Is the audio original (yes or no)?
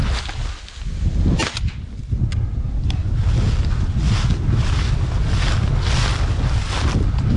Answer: yes